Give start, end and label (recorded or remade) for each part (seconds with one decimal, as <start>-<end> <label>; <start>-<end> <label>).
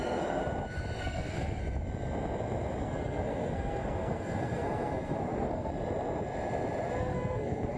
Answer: 0.0-0.4 remade; 0.4-1.0 recorded; 1.0-1.6 remade; 1.6-2.8 recorded; 2.8-5.7 remade; 5.7-7.0 recorded; 7.0-7.8 remade